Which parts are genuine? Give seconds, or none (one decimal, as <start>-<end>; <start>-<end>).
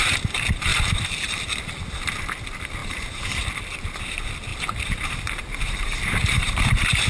0.0-0.7; 1.4-2.8; 4.0-4.5; 6.6-7.1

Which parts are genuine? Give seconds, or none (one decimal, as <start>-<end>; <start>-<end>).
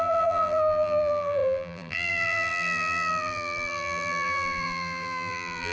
none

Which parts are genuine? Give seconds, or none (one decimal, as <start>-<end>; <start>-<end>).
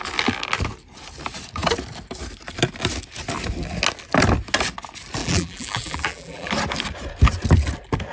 0.0-5.2; 6.5-8.1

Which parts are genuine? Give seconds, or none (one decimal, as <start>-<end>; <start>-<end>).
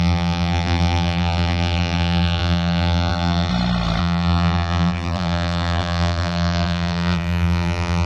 3.5-4.0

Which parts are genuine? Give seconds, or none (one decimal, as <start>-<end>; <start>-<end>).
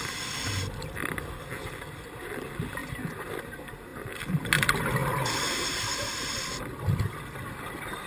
0.0-5.0; 6.6-8.1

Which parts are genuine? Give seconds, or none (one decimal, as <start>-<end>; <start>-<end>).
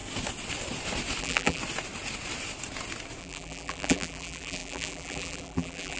0.0-1.2; 1.6-3.2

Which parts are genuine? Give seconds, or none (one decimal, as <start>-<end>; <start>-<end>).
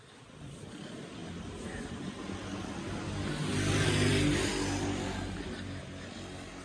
0.0-1.2; 2.3-6.6